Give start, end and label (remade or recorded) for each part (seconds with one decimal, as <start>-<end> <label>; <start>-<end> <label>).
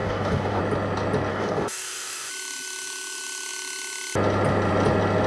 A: 0.0-0.6 remade; 0.6-1.3 recorded; 1.3-2.3 remade; 2.3-5.3 recorded